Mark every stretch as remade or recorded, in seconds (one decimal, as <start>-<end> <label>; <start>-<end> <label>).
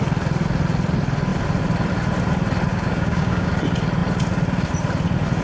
0.0-2.7 recorded; 2.7-3.5 remade; 3.5-5.4 recorded